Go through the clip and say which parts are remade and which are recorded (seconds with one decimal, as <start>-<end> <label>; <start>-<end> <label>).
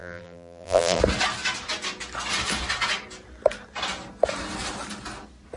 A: 0.0-1.0 remade; 1.0-5.6 recorded